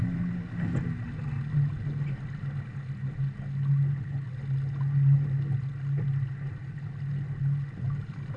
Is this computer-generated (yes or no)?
no